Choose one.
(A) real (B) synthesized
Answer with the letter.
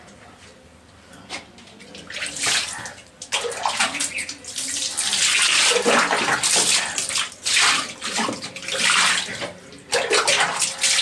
A